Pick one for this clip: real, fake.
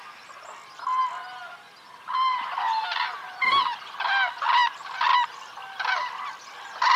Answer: real